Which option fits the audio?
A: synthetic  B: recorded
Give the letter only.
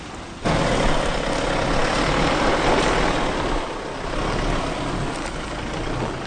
B